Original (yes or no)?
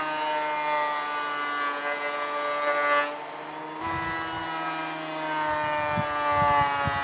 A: yes